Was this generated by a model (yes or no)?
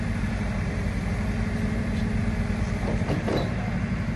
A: yes